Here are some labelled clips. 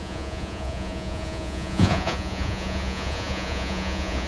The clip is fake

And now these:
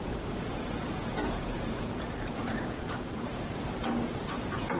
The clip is fake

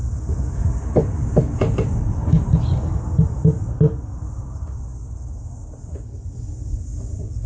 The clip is real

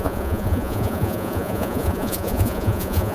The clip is fake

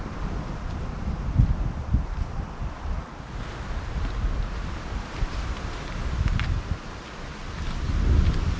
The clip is real